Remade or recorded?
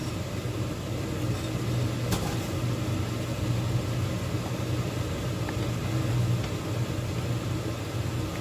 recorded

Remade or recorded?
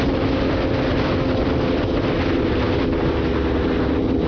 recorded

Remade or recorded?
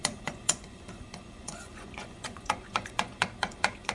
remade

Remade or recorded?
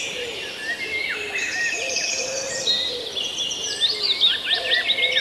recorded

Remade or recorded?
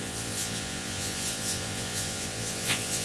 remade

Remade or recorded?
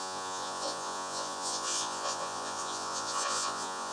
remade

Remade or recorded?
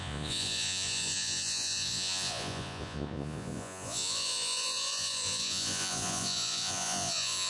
remade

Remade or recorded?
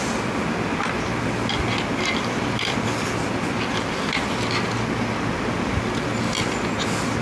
recorded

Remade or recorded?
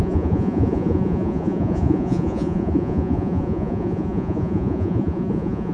remade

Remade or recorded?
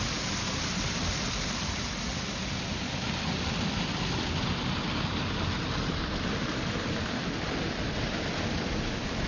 recorded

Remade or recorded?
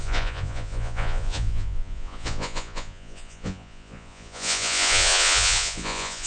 remade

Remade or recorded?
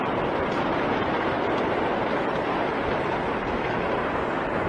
recorded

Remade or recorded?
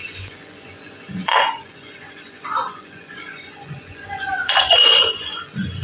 remade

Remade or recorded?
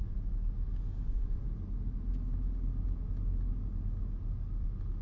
recorded